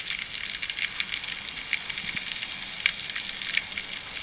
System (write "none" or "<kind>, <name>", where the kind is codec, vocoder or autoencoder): none